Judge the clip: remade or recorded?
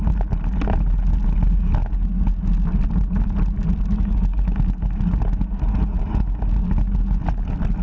recorded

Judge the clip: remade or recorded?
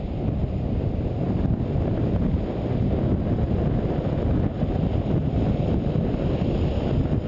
recorded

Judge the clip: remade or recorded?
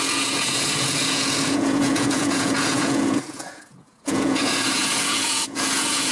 remade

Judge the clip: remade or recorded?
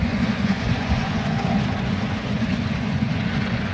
remade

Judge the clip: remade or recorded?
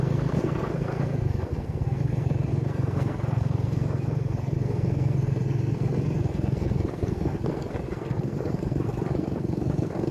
remade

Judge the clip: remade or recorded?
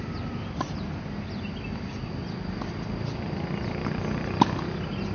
recorded